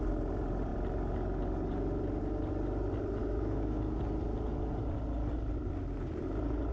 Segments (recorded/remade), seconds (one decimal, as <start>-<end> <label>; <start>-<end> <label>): 0.0-3.2 recorded; 3.2-4.0 remade; 4.0-6.7 recorded